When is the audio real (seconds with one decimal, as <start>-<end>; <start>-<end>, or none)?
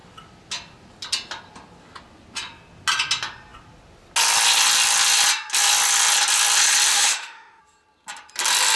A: 0.0-6.9; 7.6-8.8